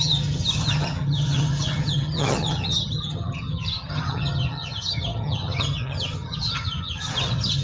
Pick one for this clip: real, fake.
fake